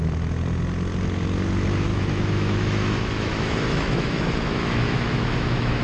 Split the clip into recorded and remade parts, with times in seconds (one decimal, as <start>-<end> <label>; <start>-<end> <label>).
0.0-1.9 recorded; 1.9-5.8 remade